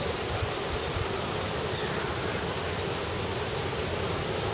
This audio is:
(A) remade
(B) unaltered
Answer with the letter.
B